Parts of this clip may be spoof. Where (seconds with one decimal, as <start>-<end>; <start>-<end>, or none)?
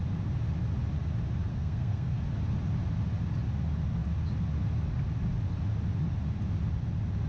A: 1.5-2.2